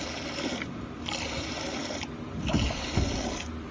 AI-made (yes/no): no